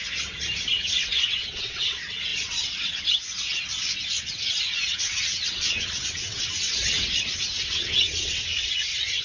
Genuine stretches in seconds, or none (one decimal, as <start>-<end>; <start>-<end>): 0.0-0.7